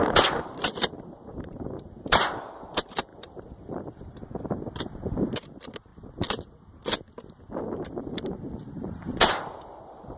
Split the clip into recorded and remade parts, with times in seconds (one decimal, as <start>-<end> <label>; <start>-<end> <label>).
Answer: 0.0-5.9 remade; 5.9-8.6 recorded; 8.6-10.2 remade